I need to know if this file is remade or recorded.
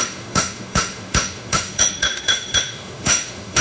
remade